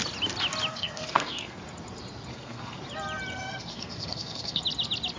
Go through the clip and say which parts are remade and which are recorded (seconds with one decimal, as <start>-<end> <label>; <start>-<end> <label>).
0.0-0.7 recorded; 0.7-1.6 remade; 1.6-2.3 recorded; 2.3-2.8 remade; 2.8-3.3 recorded; 3.3-4.6 remade; 4.6-5.2 recorded